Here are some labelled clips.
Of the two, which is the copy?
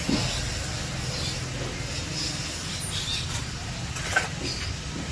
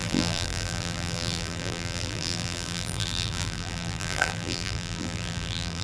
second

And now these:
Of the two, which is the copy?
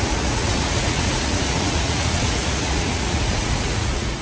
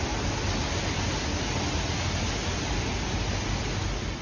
first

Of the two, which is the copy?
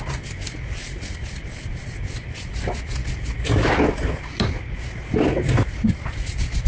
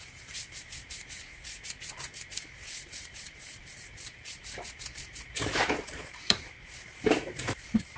second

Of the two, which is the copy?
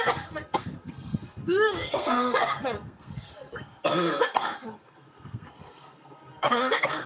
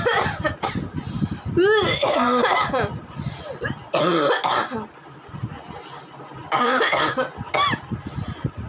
first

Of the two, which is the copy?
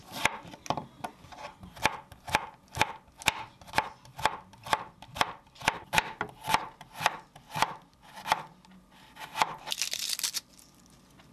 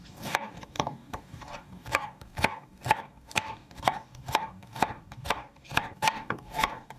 second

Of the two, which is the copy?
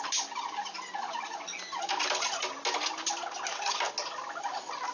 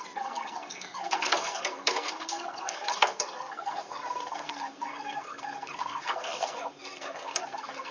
second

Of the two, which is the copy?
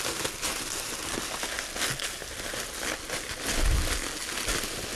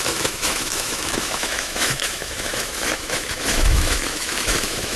second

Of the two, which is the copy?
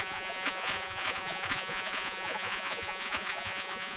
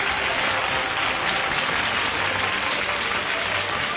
first